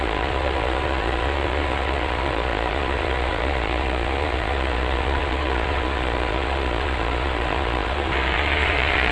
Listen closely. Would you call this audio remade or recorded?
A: remade